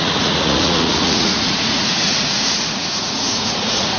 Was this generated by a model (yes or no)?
yes